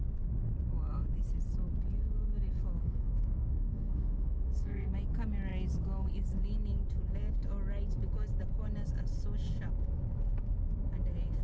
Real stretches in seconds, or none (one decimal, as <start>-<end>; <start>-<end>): 0.0-2.8; 4.9-11.4